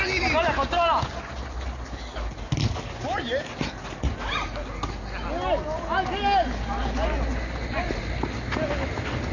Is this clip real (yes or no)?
yes